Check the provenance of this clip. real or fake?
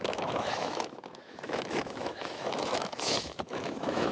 fake